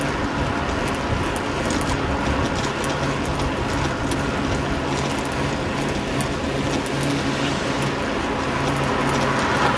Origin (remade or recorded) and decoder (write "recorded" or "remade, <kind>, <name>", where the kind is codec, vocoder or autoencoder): recorded